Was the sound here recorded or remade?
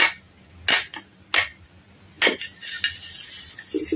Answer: recorded